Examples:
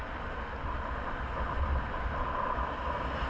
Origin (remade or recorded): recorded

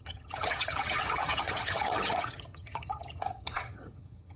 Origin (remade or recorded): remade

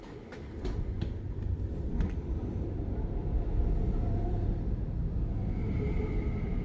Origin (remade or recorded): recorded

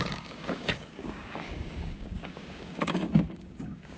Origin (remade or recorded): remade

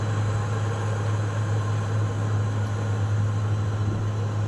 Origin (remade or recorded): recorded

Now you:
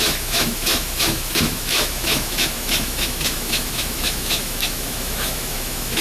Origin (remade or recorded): remade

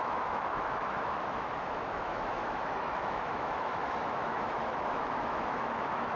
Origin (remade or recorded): remade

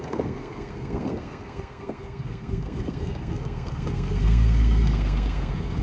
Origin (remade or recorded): remade